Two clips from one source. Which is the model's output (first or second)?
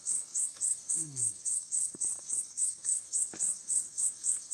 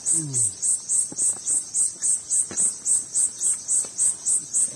first